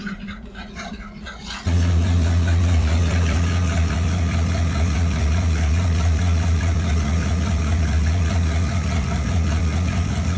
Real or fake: fake